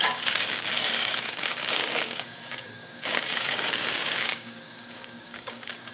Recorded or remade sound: remade